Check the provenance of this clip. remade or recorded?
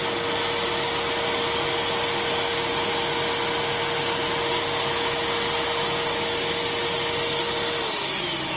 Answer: recorded